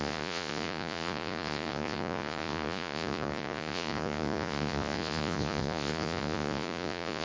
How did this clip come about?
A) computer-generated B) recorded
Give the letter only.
A